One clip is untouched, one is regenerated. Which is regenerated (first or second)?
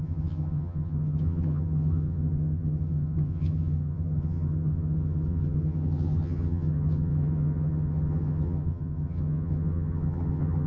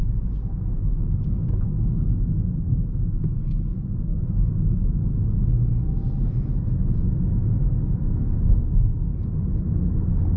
first